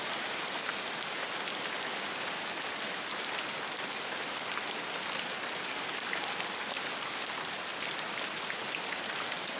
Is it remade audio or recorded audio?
recorded